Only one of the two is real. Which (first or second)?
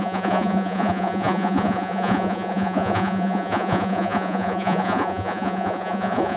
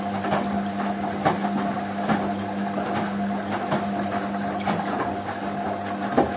second